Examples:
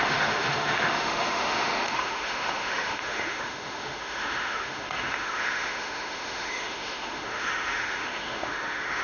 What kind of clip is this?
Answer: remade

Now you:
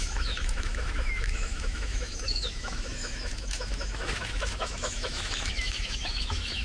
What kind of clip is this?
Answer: remade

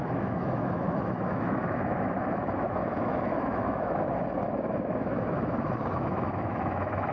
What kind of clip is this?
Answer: remade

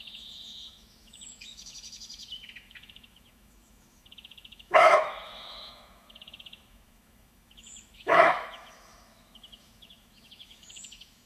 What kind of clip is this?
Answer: remade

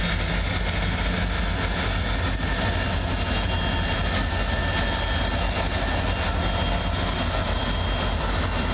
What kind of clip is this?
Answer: recorded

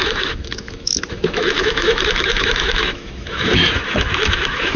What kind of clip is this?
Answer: remade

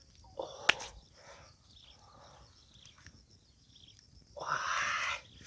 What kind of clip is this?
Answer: recorded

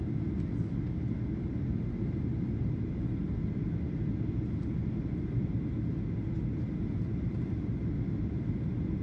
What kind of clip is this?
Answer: recorded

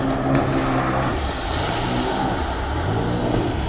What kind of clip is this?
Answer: recorded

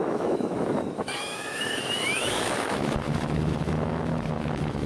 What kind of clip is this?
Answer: remade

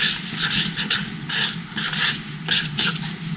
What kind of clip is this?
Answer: recorded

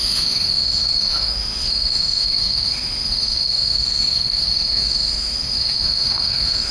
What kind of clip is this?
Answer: remade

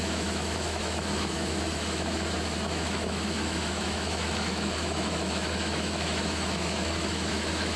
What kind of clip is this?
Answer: remade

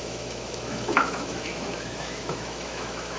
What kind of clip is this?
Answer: remade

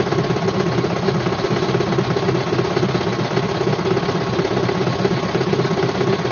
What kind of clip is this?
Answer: recorded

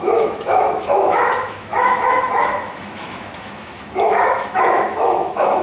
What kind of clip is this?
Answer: remade